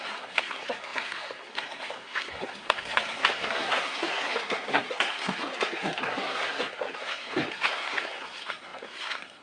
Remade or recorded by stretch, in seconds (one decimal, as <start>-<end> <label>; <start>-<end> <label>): 0.0-9.4 remade